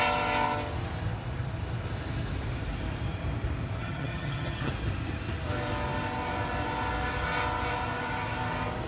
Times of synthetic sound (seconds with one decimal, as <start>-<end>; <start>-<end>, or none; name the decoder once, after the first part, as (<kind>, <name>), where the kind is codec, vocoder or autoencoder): 3.8-4.7 (vocoder, HiFi-GAN)